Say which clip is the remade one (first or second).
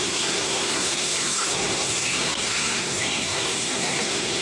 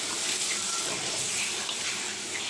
first